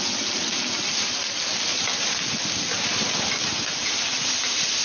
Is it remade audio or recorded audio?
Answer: recorded